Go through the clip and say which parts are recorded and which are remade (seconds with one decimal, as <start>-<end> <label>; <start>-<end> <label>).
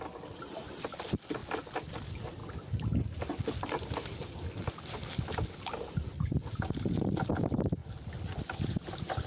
0.0-9.3 recorded